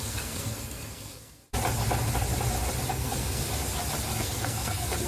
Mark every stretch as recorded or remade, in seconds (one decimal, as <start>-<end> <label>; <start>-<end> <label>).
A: 0.0-1.4 remade; 1.4-2.9 recorded; 2.9-3.4 remade; 3.4-4.2 recorded; 4.2-5.1 remade